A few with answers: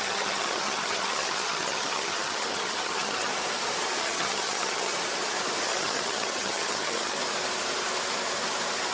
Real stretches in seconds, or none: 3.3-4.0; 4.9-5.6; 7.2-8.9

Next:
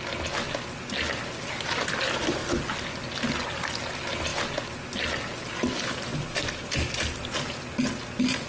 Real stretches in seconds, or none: 0.0-8.5

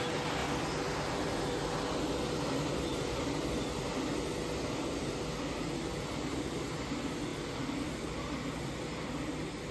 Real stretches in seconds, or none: 0.0-7.3; 8.1-9.7